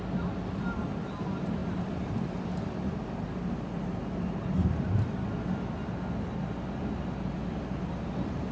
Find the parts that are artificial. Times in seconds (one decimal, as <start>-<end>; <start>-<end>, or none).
none